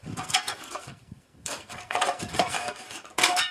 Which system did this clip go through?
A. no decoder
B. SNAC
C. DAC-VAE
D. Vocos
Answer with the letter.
B